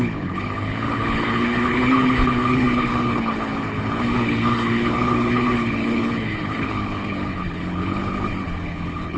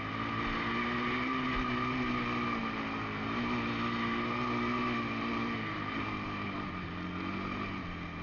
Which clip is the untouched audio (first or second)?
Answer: second